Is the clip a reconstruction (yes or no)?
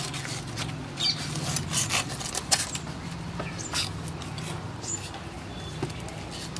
no